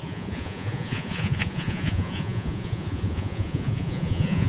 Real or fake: fake